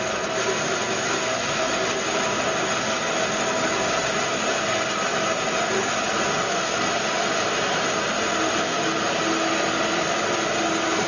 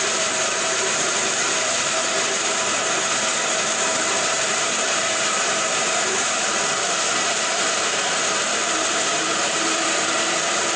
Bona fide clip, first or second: first